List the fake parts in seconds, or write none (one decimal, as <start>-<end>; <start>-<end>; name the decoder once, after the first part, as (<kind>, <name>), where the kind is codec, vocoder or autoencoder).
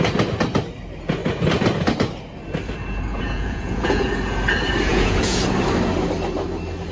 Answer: 3.1-4.1 (vocoder, Vocos); 4.9-5.4